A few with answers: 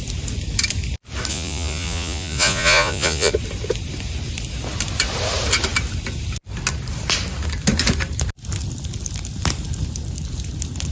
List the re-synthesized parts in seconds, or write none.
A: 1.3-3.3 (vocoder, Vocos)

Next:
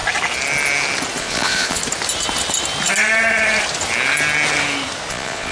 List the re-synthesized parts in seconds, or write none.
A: 1.2-1.8 (vocoder, Vocos); 5.1-5.5

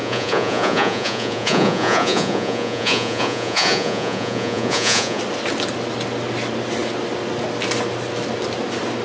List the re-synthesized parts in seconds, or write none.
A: 0.0-5.2 (vocoder, Vocos)

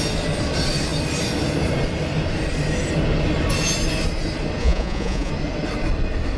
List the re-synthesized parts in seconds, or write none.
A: 4.6-5.3 (vocoder, Vocos)

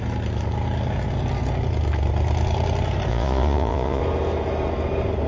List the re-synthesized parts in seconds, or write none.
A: 3.1-4.0 (vocoder, Vocos)

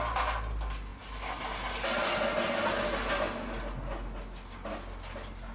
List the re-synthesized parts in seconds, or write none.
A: none

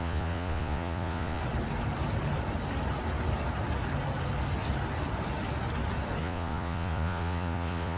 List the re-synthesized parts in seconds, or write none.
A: 0.0-1.4 (vocoder, Vocos); 6.2-8.0